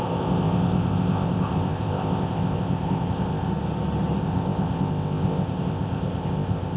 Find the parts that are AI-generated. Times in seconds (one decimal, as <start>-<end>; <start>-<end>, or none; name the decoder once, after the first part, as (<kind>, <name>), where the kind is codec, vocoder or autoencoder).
0.0-3.5 (codec, ZipCodec); 4.2-6.8